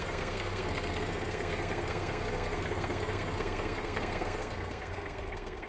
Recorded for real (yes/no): no